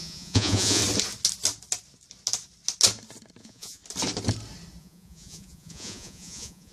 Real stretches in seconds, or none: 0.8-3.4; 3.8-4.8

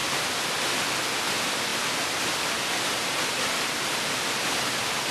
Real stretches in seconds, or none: 0.0-5.1

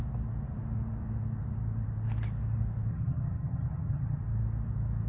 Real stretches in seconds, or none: 0.0-2.9; 4.2-5.1

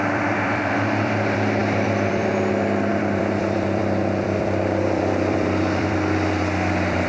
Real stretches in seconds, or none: none

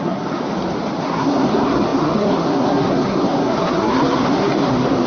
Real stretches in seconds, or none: 0.4-1.0

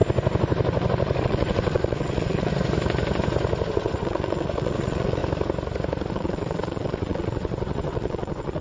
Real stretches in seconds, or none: 0.0-1.2; 2.5-3.7; 5.2-6.1